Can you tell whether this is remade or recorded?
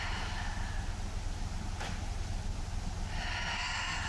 recorded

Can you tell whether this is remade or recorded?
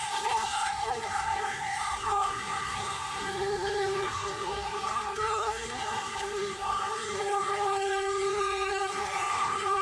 remade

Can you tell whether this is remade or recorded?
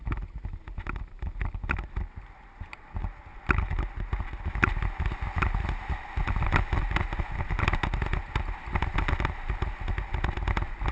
recorded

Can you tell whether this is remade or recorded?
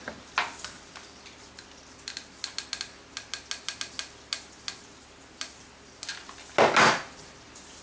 recorded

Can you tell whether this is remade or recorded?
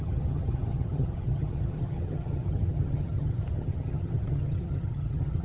remade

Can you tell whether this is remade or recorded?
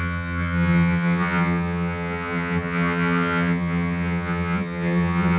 remade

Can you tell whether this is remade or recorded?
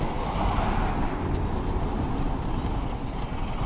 recorded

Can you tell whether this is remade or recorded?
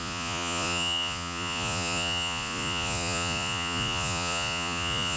remade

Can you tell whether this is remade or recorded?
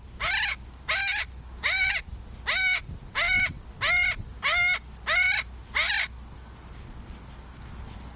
recorded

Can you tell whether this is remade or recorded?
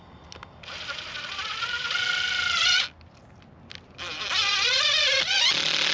recorded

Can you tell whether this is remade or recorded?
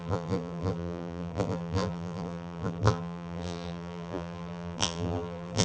remade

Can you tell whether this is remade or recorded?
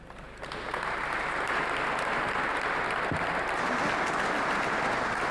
recorded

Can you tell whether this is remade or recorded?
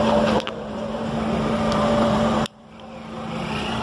remade